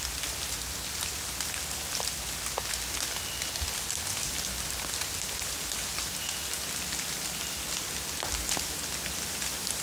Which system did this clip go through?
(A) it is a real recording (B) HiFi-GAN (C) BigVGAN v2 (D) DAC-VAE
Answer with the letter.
A